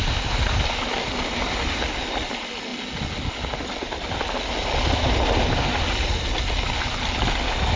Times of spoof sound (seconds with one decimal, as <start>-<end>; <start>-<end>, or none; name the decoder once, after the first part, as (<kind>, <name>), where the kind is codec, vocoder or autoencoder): none